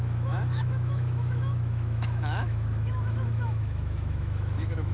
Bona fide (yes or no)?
no